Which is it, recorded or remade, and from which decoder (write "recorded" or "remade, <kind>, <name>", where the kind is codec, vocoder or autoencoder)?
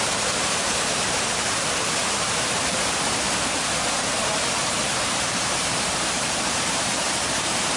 remade, vocoder, BigVGAN v2